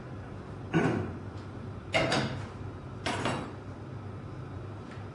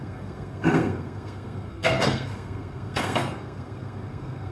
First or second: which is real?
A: first